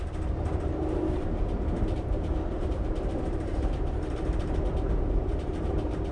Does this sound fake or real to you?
fake